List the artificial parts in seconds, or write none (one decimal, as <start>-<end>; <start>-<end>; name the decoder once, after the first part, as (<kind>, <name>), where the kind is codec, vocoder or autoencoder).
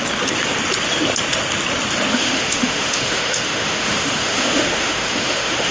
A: 2.1-5.7 (autoencoder, DAC-VAE)